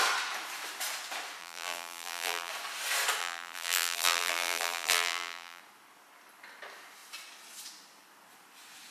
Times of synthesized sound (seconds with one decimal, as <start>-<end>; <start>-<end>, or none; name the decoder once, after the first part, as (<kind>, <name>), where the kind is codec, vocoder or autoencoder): 1.4-2.5 (vocoder, BigVGAN v2); 3.2-5.6